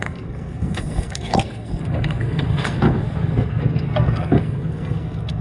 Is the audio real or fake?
fake